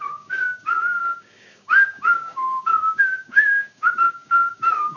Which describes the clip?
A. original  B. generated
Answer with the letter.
B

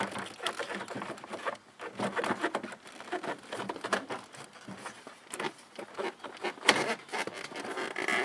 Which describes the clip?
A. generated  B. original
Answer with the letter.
B